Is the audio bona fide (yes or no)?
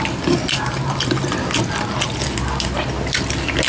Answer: yes